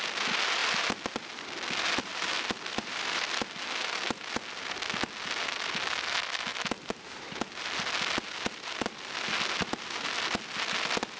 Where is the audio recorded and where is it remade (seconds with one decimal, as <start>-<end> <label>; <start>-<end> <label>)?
0.0-11.2 recorded

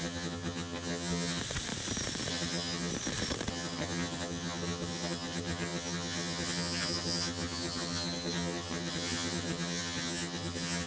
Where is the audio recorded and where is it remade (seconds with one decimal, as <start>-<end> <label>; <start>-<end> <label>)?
0.0-1.4 remade; 1.4-2.3 recorded; 2.3-2.9 remade; 2.9-3.5 recorded; 3.5-10.9 remade